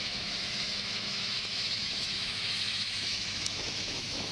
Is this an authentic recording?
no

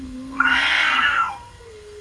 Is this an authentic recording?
no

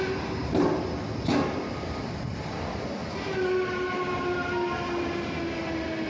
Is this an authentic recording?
yes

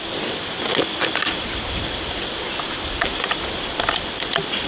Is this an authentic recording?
yes